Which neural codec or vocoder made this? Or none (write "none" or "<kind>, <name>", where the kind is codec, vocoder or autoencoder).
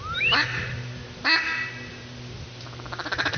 none